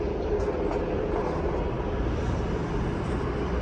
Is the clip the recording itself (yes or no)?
yes